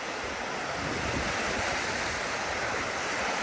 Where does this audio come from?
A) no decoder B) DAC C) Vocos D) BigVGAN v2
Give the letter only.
A